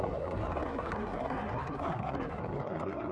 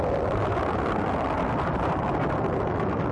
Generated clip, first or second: first